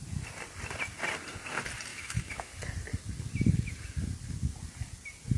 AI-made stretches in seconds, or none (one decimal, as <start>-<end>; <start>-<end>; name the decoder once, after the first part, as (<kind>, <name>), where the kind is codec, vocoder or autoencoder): 1.9-2.5 (autoencoder, DAC-VAE)

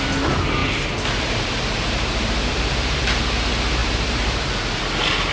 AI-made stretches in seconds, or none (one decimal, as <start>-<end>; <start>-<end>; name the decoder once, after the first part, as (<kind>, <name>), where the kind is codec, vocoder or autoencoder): 0.6-3.2 (vocoder, BigVGAN v2); 3.8-4.8